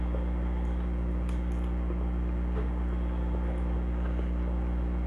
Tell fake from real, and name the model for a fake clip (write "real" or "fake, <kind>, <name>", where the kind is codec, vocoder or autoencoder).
real